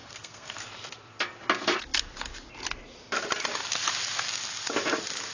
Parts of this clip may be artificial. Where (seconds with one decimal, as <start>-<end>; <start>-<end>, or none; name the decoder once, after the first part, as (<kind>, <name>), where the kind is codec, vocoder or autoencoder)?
0.0-0.6 (codec, SNAC)